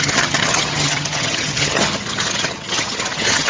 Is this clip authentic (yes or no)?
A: no